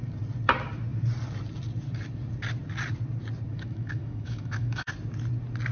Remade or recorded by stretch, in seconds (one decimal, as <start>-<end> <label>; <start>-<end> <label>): 0.0-3.5 recorded; 3.5-4.9 remade; 4.9-5.7 recorded